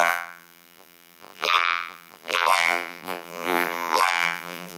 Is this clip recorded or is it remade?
remade